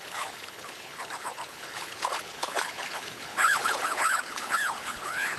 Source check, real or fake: fake